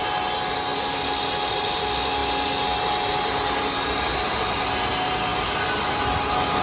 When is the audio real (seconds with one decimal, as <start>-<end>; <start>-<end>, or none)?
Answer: 0.0-6.6